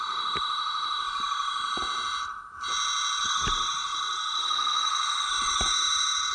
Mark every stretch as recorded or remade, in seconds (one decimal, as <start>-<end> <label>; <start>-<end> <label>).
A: 0.0-4.4 recorded; 4.4-5.3 remade; 5.3-6.3 recorded